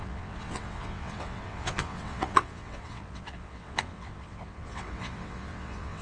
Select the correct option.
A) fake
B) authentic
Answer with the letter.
A